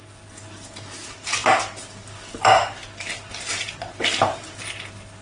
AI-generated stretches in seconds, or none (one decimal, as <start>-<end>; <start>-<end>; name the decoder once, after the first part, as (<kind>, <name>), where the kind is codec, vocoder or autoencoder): none